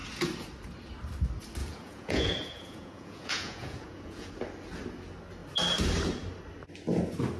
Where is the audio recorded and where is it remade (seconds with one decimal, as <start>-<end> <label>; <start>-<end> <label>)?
0.0-1.6 recorded; 1.6-4.3 remade; 4.3-7.4 recorded